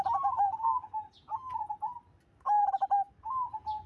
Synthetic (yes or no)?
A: no